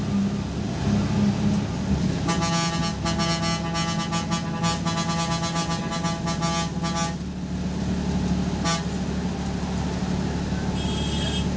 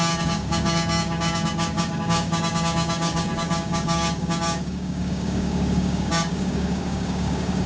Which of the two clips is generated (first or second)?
second